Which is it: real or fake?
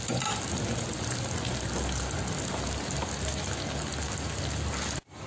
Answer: real